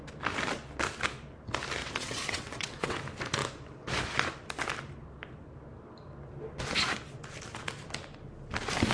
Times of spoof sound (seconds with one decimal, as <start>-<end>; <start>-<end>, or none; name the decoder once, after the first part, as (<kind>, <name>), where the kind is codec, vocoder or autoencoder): 1.8-3.0 (vocoder, WaveNeXt)